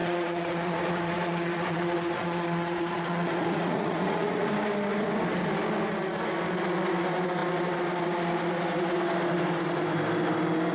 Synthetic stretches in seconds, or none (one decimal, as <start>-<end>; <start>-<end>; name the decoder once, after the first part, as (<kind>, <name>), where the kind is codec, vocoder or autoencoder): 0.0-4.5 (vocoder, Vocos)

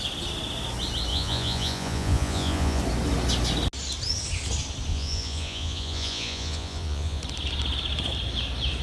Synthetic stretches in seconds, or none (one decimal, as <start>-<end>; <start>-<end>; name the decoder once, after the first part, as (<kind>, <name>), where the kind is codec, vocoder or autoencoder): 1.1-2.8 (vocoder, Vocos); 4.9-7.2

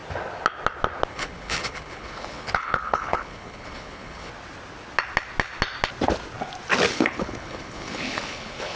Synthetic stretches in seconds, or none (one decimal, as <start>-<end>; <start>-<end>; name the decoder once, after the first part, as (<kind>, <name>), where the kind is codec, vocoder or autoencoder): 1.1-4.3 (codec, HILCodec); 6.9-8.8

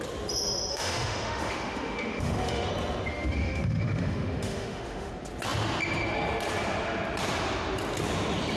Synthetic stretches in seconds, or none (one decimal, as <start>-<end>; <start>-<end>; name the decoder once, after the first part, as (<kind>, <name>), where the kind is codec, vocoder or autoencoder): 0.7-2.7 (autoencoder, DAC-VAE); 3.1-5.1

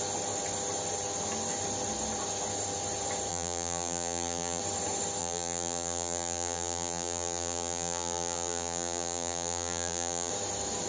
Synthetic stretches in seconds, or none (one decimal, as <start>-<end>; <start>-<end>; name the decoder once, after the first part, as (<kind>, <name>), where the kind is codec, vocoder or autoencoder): 3.3-4.6 (vocoder, BigVGAN v2); 5.2-10.3